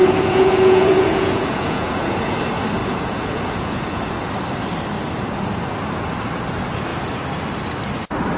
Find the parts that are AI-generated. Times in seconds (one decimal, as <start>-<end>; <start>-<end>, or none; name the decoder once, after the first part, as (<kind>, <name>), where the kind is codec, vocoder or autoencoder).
0.0-2.4 (vocoder, Vocos); 2.8-4.3